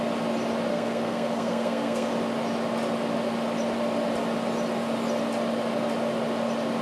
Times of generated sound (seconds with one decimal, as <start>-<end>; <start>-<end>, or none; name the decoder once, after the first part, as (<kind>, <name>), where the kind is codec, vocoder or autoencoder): 0.7-2.1 (codec, SNAC)